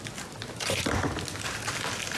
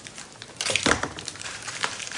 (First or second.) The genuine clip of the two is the first